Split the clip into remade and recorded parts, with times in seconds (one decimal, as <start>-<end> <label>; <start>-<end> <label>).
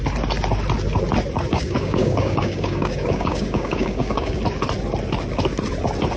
0.0-1.5 recorded; 1.5-4.4 remade; 4.4-6.2 recorded